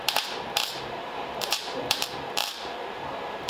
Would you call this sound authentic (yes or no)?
no